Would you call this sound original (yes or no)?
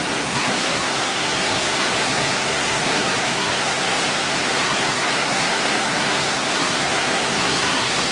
no